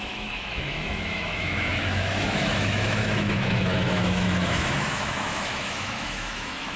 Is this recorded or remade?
remade